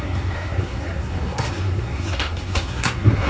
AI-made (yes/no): yes